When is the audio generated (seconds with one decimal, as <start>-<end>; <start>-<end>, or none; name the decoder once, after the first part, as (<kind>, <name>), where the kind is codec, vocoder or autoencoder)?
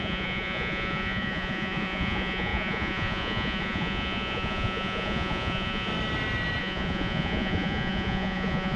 0.0-5.9 (vocoder, Vocos); 6.6-8.8